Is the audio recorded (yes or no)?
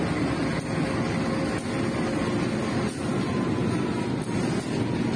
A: yes